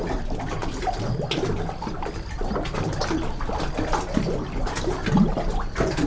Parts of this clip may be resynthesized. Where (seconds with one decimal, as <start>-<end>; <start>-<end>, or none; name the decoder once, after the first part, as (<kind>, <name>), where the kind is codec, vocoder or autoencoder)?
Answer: none